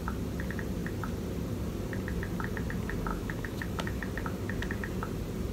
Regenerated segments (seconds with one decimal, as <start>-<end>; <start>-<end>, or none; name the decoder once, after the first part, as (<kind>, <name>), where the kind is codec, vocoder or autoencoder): 3.1-4.0 (autoencoder, DAC-VAE)